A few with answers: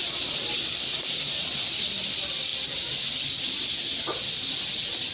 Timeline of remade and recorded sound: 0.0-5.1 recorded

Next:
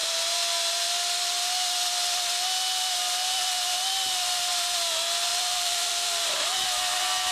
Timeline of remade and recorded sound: 0.0-5.3 recorded; 5.3-6.6 remade; 6.6-7.3 recorded